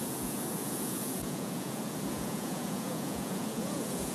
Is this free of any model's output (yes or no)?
no